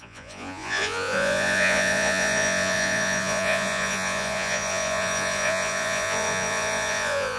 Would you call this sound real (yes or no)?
no